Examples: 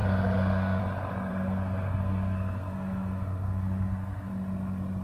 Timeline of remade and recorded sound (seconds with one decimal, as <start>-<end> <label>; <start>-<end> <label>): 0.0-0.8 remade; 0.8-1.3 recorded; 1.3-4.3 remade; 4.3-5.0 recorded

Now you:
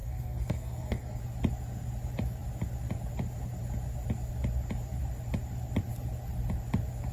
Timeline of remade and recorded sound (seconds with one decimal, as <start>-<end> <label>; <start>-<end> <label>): 0.0-1.2 remade; 1.2-7.1 recorded

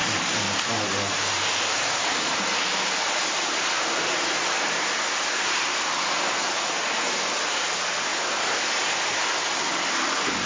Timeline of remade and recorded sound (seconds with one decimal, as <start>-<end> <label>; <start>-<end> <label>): 0.0-4.1 remade; 4.1-8.1 recorded; 8.1-8.6 remade; 8.6-10.5 recorded

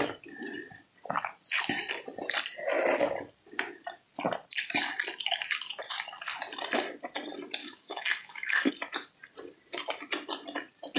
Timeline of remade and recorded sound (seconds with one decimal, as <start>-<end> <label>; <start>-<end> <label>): 0.0-7.6 recorded; 7.6-8.7 remade; 8.7-11.0 recorded

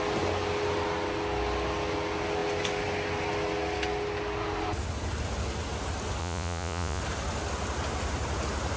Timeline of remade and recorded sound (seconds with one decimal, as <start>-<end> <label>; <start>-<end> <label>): 0.0-6.2 recorded; 6.2-7.0 remade; 7.0-8.8 recorded